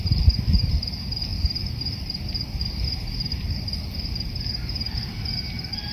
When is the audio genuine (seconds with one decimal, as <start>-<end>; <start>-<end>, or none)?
none